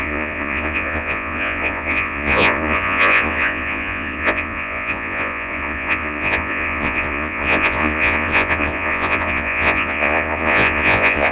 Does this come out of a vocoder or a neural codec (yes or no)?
yes